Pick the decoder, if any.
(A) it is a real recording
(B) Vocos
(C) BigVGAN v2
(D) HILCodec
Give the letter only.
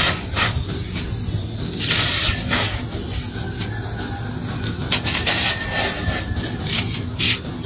A